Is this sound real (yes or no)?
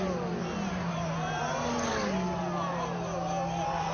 yes